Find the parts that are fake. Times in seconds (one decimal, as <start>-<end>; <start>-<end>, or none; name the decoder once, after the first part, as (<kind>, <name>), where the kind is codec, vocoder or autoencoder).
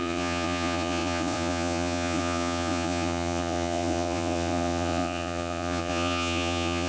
0.0-6.9 (vocoder, Vocos)